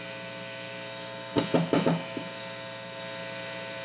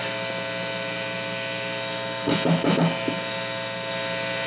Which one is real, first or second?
second